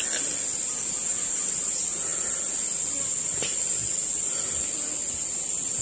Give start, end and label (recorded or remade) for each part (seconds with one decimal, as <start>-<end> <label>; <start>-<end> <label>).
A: 0.0-5.8 recorded

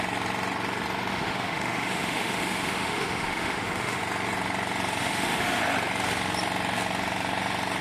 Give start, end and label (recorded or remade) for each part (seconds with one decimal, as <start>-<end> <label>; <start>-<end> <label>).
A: 0.0-1.1 recorded; 1.1-4.0 remade; 4.0-5.0 recorded; 5.0-5.6 remade; 5.6-7.8 recorded